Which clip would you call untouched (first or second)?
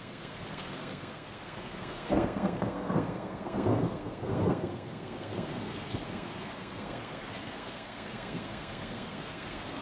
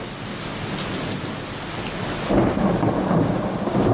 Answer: second